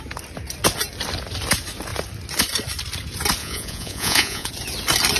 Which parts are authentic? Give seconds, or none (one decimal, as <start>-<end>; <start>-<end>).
0.0-3.4; 4.5-5.2

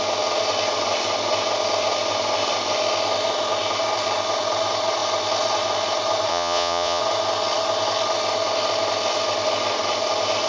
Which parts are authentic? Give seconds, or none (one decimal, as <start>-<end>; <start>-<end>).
0.0-6.3; 7.0-10.5